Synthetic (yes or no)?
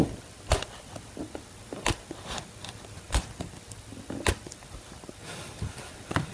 no